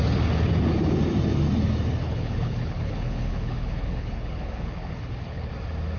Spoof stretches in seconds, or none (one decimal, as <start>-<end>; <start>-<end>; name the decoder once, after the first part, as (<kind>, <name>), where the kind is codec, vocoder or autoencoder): 2.0-5.5 (codec, HILCodec)